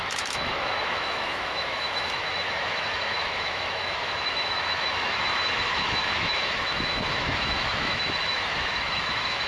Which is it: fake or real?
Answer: fake